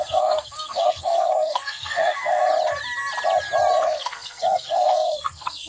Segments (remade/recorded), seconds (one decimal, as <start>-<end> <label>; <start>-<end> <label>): 0.0-2.4 remade; 2.4-3.7 recorded; 3.7-5.7 remade